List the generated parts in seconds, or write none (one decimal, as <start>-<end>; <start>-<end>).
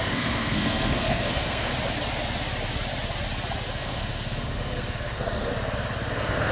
0.0-1.7; 3.7-5.5; 6.1-6.5